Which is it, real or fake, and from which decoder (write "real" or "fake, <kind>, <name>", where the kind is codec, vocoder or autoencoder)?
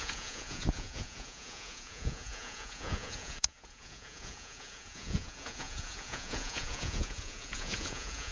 fake, vocoder, Vocos